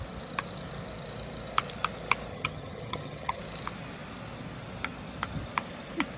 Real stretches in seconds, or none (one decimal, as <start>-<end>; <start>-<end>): 0.0-2.3; 3.4-6.2